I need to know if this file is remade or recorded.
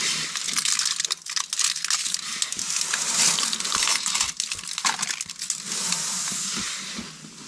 recorded